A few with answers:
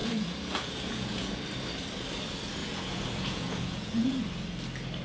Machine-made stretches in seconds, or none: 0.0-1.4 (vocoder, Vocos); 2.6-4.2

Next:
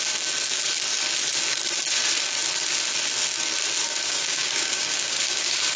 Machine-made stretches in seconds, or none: 3.8-5.8 (codec, DAC)

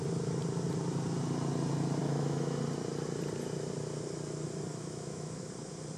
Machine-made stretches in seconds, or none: 2.0-2.6 (autoencoder, DAC-VAE); 4.7-5.5

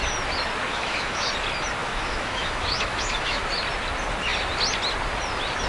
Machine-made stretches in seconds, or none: 0.7-1.3 (autoencoder, DAC-VAE); 1.8-3.4